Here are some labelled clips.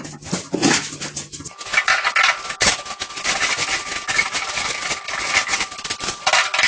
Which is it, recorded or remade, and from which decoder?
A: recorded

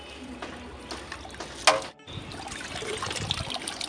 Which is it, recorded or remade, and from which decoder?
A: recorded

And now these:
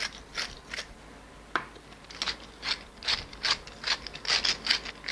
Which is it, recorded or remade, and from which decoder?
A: recorded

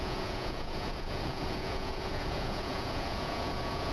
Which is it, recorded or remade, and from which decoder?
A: remade, vocoder, Vocos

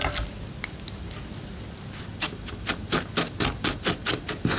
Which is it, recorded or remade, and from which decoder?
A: recorded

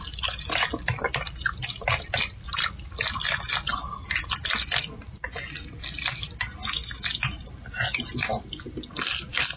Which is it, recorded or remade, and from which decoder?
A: recorded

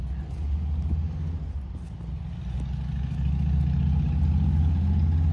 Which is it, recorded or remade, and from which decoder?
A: recorded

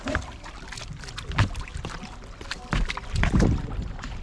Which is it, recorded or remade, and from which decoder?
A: recorded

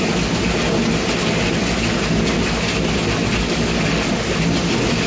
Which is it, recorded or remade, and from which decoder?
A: recorded